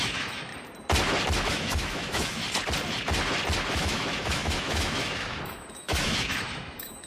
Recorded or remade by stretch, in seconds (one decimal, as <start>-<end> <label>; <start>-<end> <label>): 0.0-0.5 remade; 0.5-1.5 recorded; 1.5-2.4 remade; 2.4-3.7 recorded; 3.7-7.1 remade